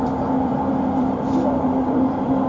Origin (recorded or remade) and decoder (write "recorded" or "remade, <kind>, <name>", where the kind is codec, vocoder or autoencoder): remade, vocoder, BigVGAN v2